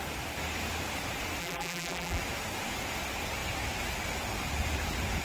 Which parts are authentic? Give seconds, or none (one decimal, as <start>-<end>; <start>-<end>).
0.0-1.4; 2.2-5.2